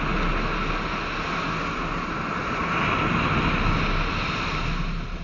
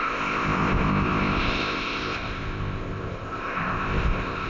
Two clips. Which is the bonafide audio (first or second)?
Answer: first